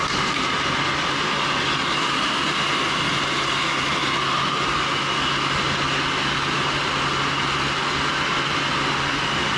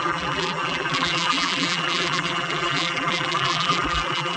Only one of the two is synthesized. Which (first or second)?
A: second